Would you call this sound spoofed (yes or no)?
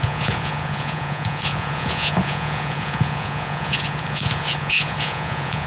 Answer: yes